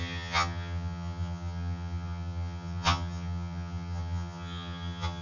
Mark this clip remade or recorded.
remade